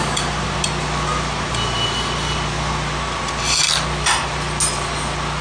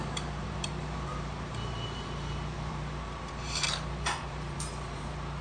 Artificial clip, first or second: second